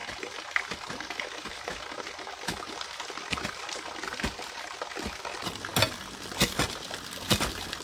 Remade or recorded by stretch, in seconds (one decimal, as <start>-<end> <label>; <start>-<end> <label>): 0.0-7.8 recorded